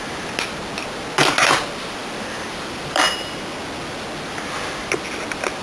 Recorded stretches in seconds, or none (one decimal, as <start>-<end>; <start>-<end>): 0.0-2.0; 3.3-5.6

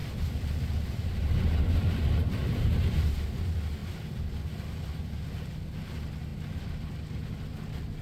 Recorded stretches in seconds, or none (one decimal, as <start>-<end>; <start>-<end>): 3.2-3.8; 4.3-6.3; 6.8-8.0

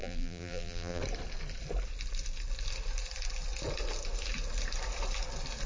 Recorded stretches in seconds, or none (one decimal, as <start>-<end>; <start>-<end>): 1.0-5.7

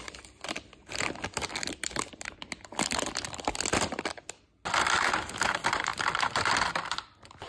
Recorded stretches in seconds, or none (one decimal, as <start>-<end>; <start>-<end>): 0.0-7.5

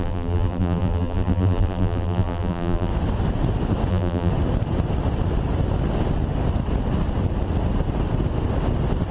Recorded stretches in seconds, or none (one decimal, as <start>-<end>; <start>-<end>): 2.9-3.9; 4.3-9.1